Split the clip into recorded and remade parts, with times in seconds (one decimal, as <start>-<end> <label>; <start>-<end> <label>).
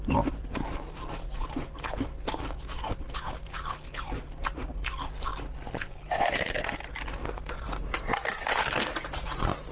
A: 0.0-9.7 recorded